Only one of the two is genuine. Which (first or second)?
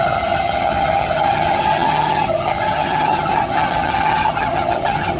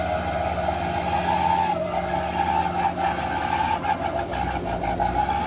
second